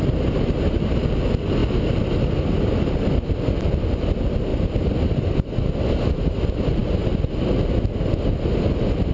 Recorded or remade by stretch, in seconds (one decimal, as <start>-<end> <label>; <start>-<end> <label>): 0.0-9.1 recorded